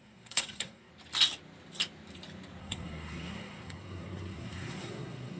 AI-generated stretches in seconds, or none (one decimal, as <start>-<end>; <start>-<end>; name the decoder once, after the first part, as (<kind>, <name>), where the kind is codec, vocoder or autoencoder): 0.0-0.9 (codec, SNAC); 2.6-5.4